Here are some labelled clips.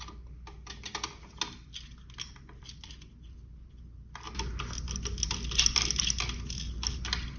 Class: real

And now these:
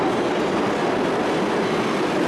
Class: real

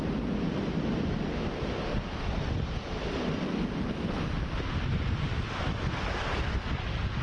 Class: real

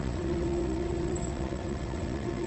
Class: fake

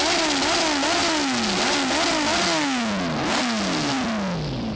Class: real